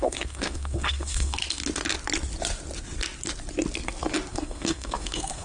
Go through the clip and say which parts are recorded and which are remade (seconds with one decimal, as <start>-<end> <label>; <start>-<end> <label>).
0.0-1.4 remade; 1.4-4.3 recorded; 4.3-5.4 remade